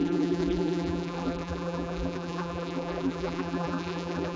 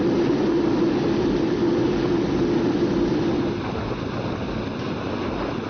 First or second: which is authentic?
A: second